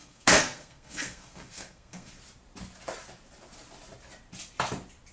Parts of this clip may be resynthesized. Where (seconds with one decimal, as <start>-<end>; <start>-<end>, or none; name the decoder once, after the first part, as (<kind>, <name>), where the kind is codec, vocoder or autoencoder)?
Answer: 0.0-2.1 (codec, SNAC)